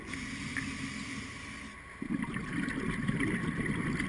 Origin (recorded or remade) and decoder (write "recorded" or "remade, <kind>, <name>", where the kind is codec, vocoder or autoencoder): recorded